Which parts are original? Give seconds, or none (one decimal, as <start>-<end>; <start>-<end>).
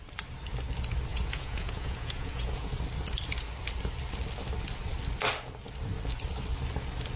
0.0-1.1; 2.7-7.2